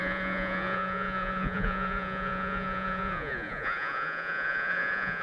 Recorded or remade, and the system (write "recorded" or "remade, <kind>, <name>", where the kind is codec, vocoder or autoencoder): remade, vocoder, Vocos